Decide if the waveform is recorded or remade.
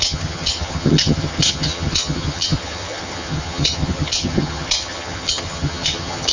remade